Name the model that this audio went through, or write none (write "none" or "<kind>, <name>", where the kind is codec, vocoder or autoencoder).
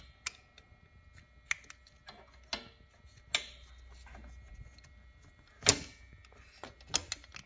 none